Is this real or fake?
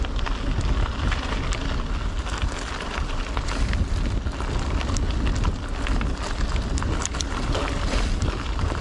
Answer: real